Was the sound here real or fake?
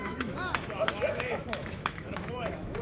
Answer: fake